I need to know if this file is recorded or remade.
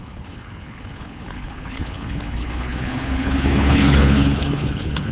remade